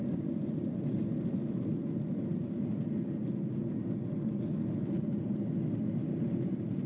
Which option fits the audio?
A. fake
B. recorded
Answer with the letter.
B